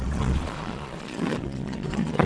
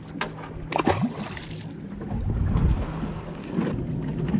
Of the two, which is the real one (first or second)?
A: second